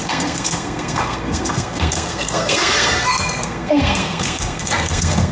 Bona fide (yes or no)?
no